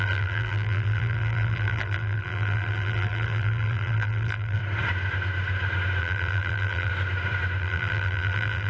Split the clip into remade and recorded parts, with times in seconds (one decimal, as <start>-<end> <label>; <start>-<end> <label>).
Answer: 0.0-4.6 remade; 4.6-6.0 recorded; 6.0-6.9 remade; 6.9-7.6 recorded; 7.6-8.7 remade